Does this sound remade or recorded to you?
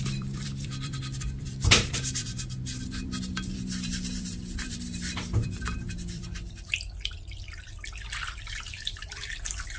remade